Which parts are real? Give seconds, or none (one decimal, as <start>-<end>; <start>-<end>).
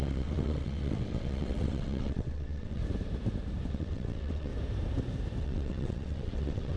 2.8-3.7; 4.5-5.4